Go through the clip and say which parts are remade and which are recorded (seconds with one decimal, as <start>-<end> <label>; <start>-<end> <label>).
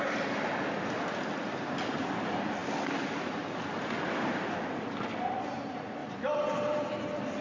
0.0-7.4 recorded